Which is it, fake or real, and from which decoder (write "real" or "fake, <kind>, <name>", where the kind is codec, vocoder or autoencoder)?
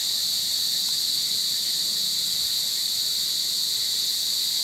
real